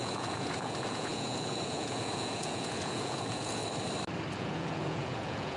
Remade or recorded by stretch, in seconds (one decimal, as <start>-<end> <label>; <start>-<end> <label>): 0.0-3.6 remade; 3.6-4.3 recorded; 4.3-5.6 remade